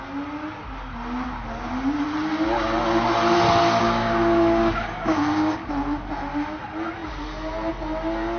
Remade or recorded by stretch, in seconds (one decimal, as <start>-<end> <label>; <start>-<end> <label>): 0.0-3.8 recorded; 3.8-5.7 remade; 5.7-8.4 recorded